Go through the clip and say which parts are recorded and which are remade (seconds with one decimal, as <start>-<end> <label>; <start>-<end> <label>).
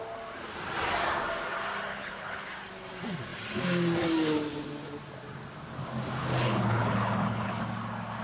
0.0-1.9 recorded; 1.9-2.5 remade; 2.5-6.2 recorded; 6.2-7.6 remade; 7.6-8.2 recorded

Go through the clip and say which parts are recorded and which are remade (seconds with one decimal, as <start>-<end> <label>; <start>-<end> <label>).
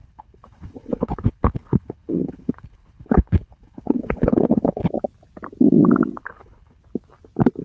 0.0-4.9 remade; 4.9-6.2 recorded; 6.2-6.8 remade; 6.8-7.6 recorded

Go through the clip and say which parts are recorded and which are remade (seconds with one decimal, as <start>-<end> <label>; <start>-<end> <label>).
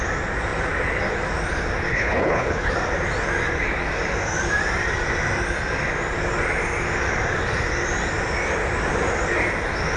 0.0-1.9 recorded; 1.9-2.7 remade; 2.7-10.0 recorded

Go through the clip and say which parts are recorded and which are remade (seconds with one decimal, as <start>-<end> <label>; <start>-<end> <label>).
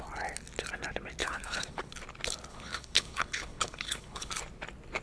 0.0-1.2 recorded; 1.2-1.9 remade; 1.9-2.5 recorded; 2.5-4.3 remade; 4.3-5.0 recorded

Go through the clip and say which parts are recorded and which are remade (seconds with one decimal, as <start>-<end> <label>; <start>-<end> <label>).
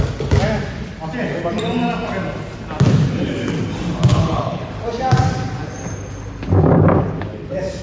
0.0-4.1 recorded; 4.1-4.7 remade; 4.7-7.8 recorded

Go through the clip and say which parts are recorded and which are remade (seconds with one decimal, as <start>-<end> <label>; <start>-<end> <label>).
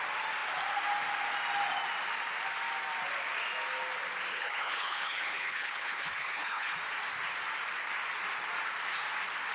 0.0-4.3 recorded; 4.3-6.7 remade; 6.7-9.5 recorded